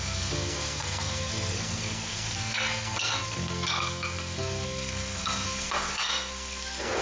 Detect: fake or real fake